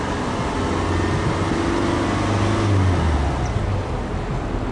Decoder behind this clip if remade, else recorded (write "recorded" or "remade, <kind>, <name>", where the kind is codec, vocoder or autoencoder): recorded